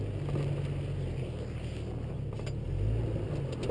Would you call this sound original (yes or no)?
yes